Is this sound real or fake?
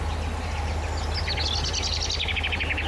real